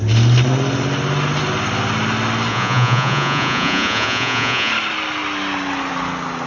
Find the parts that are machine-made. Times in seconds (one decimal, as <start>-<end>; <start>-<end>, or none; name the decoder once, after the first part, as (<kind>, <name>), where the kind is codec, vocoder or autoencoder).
2.5-4.7 (vocoder, Vocos)